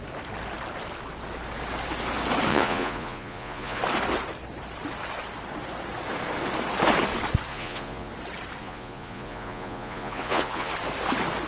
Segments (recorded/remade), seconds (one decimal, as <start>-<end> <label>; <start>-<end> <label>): 0.0-2.5 recorded; 2.5-3.8 remade; 3.8-7.5 recorded; 7.5-8.1 remade; 8.1-8.6 recorded; 8.6-10.7 remade; 10.7-11.5 recorded